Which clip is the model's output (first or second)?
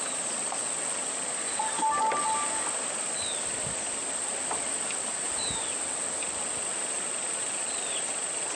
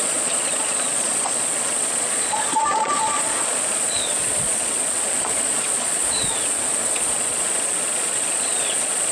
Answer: second